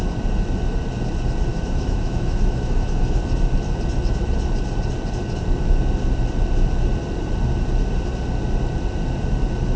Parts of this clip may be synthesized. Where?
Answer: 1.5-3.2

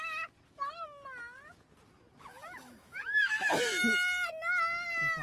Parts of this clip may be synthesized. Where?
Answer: 2.3-4.3